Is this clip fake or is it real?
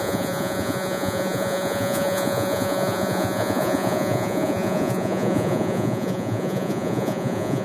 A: fake